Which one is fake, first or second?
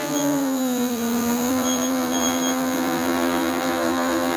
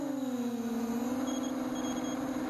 first